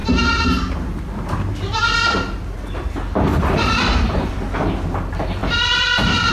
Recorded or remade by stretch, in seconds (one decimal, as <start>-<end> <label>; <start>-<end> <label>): 0.0-3.3 recorded; 3.3-4.3 remade; 4.3-5.4 recorded; 5.4-6.3 remade